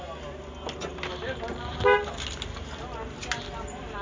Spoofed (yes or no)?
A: no